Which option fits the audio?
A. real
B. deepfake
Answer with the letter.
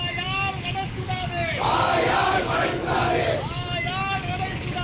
B